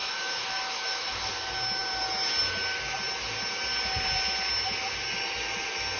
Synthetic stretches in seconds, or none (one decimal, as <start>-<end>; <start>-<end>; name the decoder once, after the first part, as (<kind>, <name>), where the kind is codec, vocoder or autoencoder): 0.0-1.3 (autoencoder, DAC-VAE)